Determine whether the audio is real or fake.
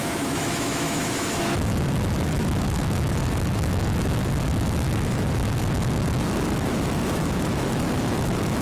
fake